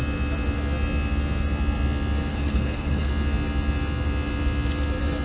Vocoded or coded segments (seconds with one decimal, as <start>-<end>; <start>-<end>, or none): 2.3-3.1